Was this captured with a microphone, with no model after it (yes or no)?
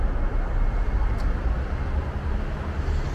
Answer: yes